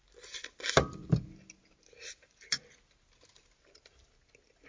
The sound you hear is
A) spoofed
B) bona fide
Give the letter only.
B